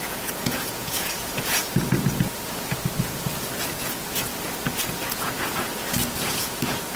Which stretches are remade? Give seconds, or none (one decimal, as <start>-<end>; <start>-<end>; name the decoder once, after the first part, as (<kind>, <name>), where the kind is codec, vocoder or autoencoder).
0.0-1.6 (vocoder, Vocos); 3.0-4.3; 5.1-5.7; 6.3-7.0